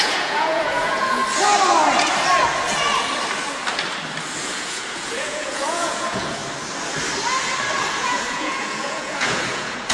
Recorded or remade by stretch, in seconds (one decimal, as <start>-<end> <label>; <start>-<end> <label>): 0.0-1.2 remade; 1.2-4.4 recorded; 4.4-6.4 remade; 6.4-8.0 recorded; 8.0-9.9 remade